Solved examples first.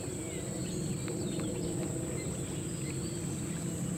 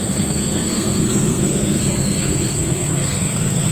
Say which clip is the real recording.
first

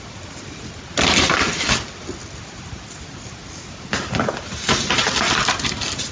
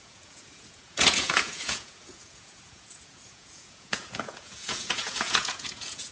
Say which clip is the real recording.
first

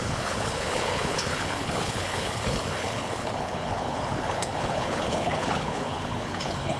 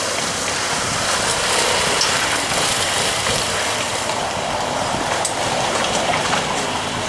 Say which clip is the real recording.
second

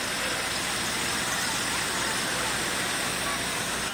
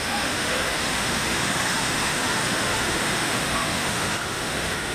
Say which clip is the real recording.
first